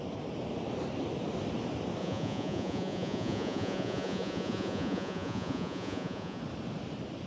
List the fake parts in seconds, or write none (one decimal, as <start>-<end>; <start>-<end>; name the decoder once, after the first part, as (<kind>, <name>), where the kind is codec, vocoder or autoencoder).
2.0-6.4 (vocoder, Vocos)